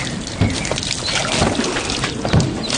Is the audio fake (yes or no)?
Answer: no